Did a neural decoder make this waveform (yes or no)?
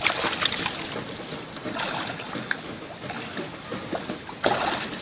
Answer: no